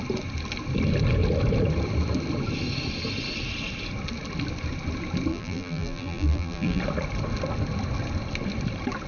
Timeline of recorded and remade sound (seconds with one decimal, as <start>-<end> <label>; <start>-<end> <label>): 0.0-5.3 recorded; 5.3-6.8 remade; 6.8-9.1 recorded